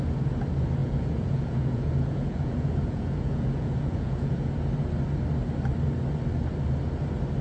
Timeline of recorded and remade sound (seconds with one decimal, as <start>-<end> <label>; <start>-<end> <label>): 0.0-0.8 recorded; 0.8-4.5 remade; 4.5-7.4 recorded